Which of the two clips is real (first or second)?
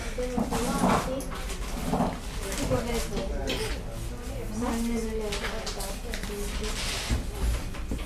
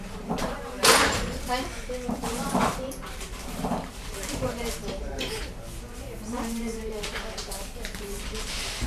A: first